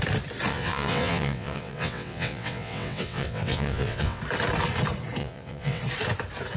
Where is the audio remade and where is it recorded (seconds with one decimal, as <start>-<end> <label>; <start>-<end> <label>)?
0.0-0.5 recorded; 0.5-4.2 remade; 4.2-5.2 recorded; 5.2-5.8 remade; 5.8-6.6 recorded

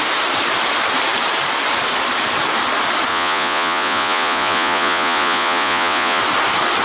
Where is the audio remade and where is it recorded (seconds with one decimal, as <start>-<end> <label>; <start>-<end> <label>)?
0.0-3.1 recorded; 3.1-6.2 remade; 6.2-6.8 recorded